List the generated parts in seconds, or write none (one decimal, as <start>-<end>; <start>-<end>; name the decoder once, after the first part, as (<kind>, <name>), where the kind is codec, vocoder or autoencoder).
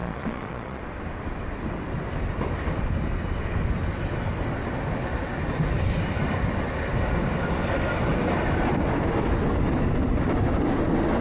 0.0-0.8 (vocoder, Vocos)